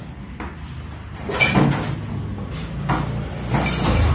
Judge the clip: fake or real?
real